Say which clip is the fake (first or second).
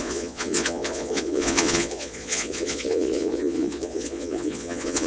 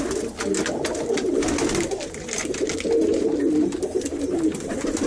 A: first